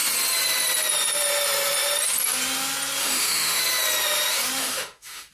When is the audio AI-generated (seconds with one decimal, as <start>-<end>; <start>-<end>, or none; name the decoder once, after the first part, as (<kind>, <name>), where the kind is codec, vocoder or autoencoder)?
3.0-3.6 (autoencoder, DAC-VAE); 4.6-5.3